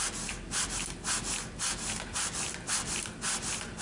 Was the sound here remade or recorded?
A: recorded